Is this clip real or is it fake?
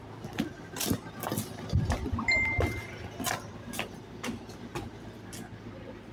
real